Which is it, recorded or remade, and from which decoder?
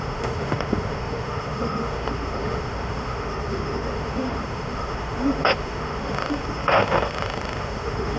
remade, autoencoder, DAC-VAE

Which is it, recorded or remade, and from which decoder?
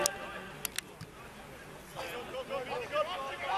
recorded